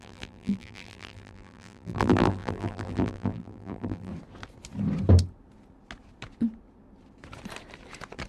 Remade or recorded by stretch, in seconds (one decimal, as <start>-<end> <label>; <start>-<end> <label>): 0.0-4.1 remade; 4.1-8.3 recorded